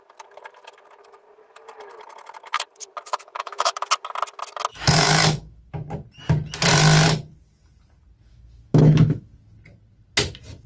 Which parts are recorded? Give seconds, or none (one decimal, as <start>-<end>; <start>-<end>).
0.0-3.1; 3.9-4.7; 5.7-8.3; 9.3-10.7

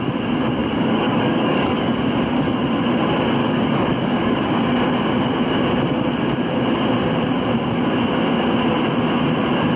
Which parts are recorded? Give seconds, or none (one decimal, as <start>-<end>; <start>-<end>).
0.0-0.6; 2.0-3.4; 4.5-9.8

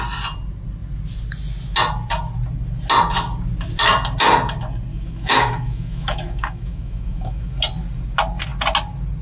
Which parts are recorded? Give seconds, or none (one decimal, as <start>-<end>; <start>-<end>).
0.0-4.9; 7.6-9.2

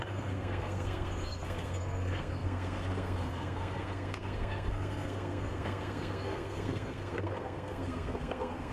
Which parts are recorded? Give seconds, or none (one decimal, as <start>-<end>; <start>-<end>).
none

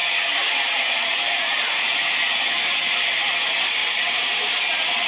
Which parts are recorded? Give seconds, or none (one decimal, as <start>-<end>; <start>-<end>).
3.1-3.8; 4.4-5.1

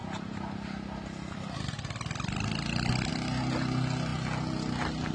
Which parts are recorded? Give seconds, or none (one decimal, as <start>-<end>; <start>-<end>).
0.0-5.1